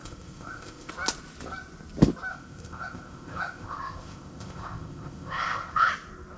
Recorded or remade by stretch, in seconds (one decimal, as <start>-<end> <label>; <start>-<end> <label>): 0.0-0.9 remade; 0.9-2.3 recorded; 2.3-5.9 remade; 5.9-6.4 recorded

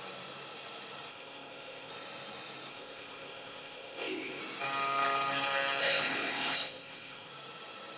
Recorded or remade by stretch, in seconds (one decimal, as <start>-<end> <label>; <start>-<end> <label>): 0.0-1.1 recorded; 1.1-1.9 remade; 1.9-2.7 recorded; 2.7-4.4 remade; 4.4-5.8 recorded; 5.8-7.3 remade; 7.3-8.0 recorded

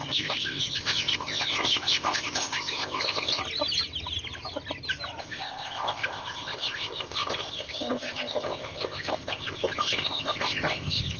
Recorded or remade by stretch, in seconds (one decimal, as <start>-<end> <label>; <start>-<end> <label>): 0.0-3.4 remade; 3.4-5.2 recorded; 5.2-11.2 remade

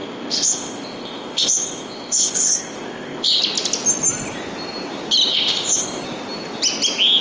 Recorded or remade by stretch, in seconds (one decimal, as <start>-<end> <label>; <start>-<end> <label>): 0.0-3.4 remade; 3.4-5.3 recorded; 5.3-6.0 remade; 6.0-7.2 recorded

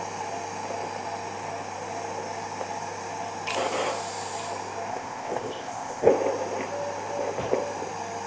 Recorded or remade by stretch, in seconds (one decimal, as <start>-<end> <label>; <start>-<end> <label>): 0.0-4.9 recorded; 4.9-6.1 remade; 6.1-8.3 recorded